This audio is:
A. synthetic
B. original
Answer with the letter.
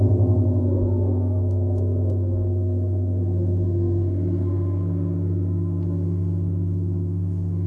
A